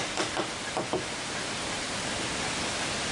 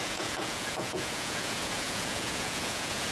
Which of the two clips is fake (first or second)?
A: second